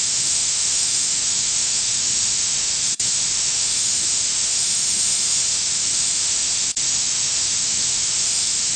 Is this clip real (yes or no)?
no